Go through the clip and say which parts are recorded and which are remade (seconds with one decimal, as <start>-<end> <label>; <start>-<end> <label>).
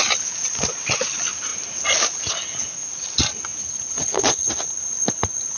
0.0-3.6 recorded; 3.6-4.5 remade; 4.5-5.6 recorded